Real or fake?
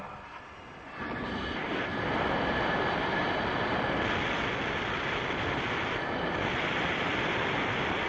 real